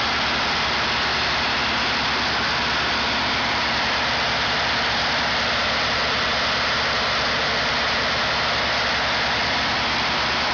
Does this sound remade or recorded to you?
recorded